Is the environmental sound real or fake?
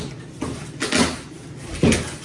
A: real